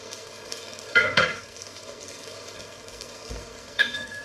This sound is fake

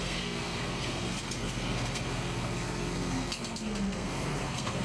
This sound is fake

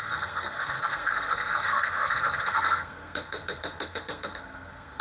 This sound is fake